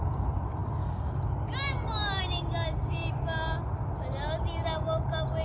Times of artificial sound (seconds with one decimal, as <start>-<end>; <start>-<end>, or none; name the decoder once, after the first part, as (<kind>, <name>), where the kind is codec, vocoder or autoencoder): none